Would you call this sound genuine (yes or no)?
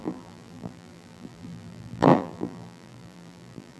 no